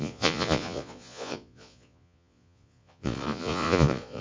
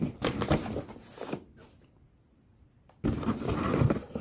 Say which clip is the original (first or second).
second